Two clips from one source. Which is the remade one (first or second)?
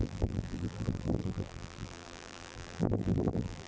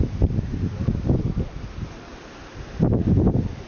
first